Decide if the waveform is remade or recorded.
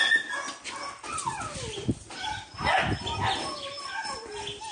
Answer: recorded